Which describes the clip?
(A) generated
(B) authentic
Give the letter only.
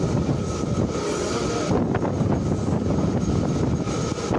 B